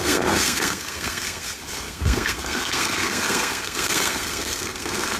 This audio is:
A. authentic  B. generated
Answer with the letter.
B